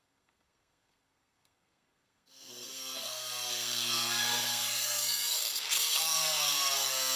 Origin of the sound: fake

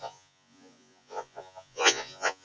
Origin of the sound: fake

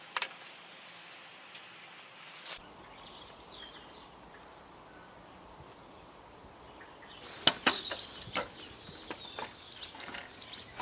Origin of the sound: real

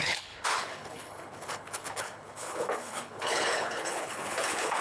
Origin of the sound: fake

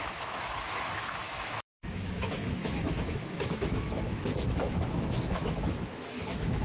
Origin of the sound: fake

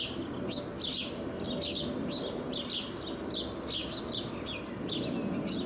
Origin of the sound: real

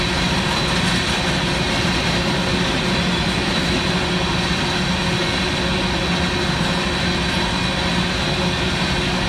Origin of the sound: real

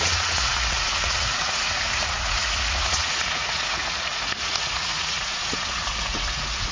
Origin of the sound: fake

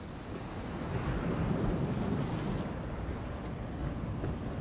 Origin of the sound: real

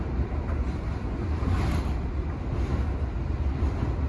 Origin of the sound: real